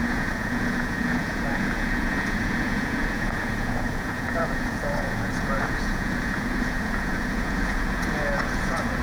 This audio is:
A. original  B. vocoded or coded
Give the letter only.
B